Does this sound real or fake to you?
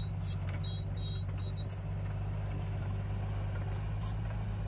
real